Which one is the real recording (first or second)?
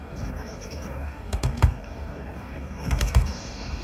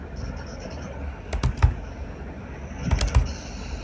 second